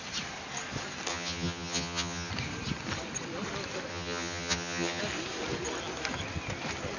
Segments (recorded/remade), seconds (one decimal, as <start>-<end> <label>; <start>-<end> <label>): 0.0-1.1 recorded; 1.1-2.3 remade; 2.3-3.9 recorded; 3.9-5.0 remade; 5.0-7.0 recorded